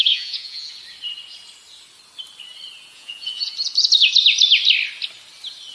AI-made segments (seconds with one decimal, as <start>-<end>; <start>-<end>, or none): 0.0-0.7; 2.9-3.5

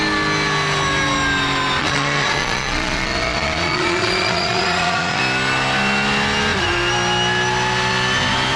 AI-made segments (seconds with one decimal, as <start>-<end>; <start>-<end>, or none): 1.8-5.2

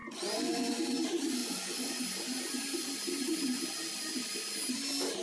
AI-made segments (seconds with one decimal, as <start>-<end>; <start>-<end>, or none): 0.0-0.8; 1.4-2.0

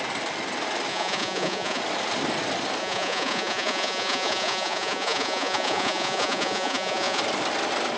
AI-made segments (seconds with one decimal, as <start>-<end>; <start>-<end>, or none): 0.9-1.8; 2.8-7.2

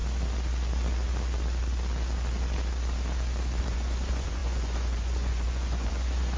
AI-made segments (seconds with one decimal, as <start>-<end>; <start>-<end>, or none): 3.6-6.4

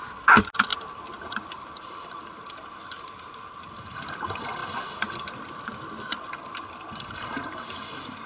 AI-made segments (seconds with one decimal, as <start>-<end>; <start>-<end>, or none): none

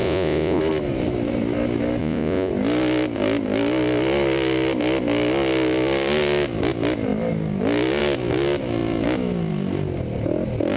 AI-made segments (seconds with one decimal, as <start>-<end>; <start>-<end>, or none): 0.0-0.6; 2.0-2.5